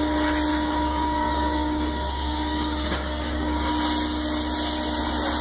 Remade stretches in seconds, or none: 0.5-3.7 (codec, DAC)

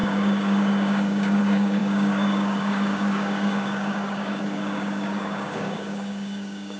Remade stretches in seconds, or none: 0.0-6.8 (codec, DAC)

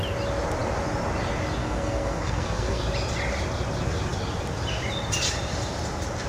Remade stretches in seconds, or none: 1.6-2.8 (codec, SNAC)

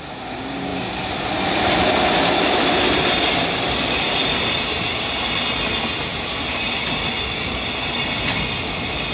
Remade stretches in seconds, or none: none

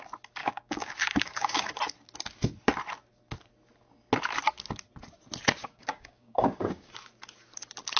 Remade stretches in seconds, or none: 0.4-1.8 (codec, DAC); 5.6-6.9

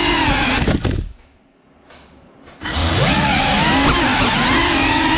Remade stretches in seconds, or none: 2.8-3.4 (vocoder, Vocos)

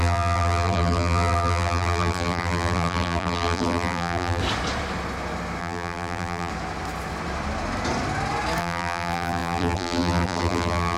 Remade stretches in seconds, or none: 0.0-4.4 (vocoder, BigVGAN v2); 5.6-6.5; 8.6-11.0

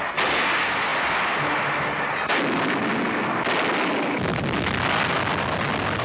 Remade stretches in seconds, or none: none